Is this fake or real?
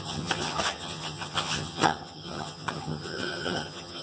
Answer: fake